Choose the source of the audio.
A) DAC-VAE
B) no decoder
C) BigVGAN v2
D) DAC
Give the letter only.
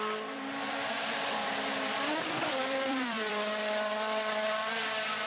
C